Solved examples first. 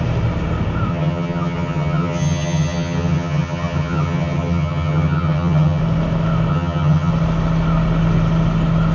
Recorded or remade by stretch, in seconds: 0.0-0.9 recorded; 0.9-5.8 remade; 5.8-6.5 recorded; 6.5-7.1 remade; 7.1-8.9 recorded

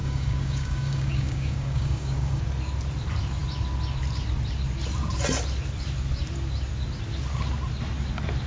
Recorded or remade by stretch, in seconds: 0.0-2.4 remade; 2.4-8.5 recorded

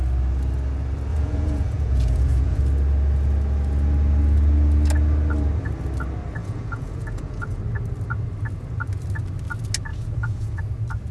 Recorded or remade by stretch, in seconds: 0.0-1.1 recorded; 1.1-2.6 remade; 2.6-6.4 recorded; 6.4-7.6 remade; 7.6-9.9 recorded; 9.9-10.6 remade; 10.6-11.1 recorded

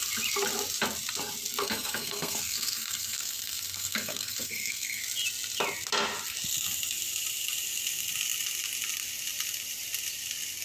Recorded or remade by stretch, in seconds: 0.0-1.6 recorded; 1.6-5.0 remade; 5.0-10.6 recorded